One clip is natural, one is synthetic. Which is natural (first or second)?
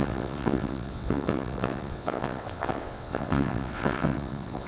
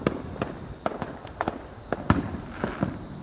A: second